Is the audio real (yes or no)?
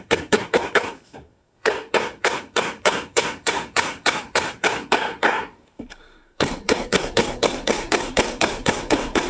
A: no